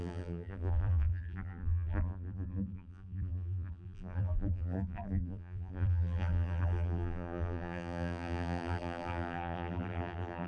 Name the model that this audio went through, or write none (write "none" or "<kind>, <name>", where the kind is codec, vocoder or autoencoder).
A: vocoder, BigVGAN v2